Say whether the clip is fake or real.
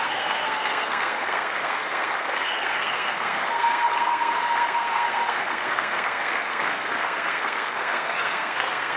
fake